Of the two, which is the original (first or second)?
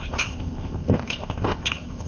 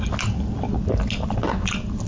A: second